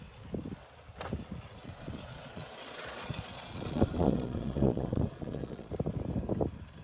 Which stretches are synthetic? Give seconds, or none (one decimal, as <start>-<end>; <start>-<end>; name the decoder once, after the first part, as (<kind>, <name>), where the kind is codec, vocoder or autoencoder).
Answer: 1.6-5.7 (vocoder, Vocos)